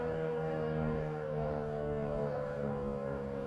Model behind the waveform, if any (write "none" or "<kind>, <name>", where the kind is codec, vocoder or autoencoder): codec, DAC